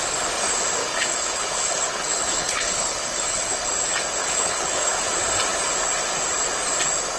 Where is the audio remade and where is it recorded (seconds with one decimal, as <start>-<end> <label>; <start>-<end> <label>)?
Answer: 0.0-0.8 recorded; 0.8-3.6 remade; 3.6-4.2 recorded; 4.2-5.0 remade; 5.0-7.2 recorded